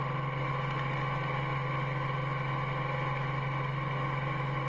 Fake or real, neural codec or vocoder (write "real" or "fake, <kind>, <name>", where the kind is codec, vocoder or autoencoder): real